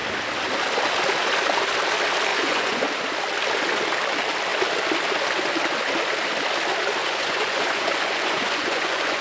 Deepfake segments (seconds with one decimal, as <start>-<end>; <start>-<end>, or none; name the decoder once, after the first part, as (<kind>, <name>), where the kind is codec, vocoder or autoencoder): 2.3-2.8 (vocoder, Vocos); 7.0-9.2